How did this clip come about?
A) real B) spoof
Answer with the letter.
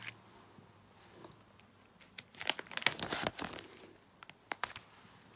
A